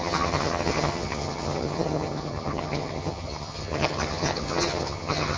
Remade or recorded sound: remade